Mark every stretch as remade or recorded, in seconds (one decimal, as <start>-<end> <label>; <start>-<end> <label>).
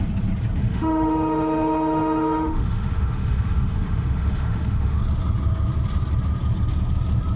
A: 0.0-0.6 recorded; 0.6-5.0 remade; 5.0-7.4 recorded